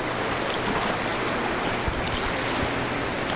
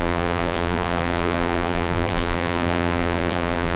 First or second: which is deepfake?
second